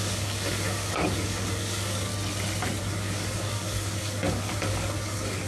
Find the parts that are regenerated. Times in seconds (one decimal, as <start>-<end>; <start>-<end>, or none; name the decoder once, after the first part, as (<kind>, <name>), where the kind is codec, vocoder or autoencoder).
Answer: 0.0-2.1 (codec, DAC); 2.8-5.5